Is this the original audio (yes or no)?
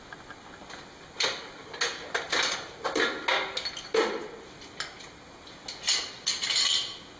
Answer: yes